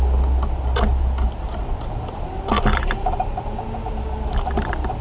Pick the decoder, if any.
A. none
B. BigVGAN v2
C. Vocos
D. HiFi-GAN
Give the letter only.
A